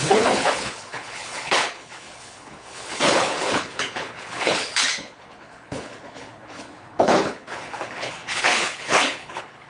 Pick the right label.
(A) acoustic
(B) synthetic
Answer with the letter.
B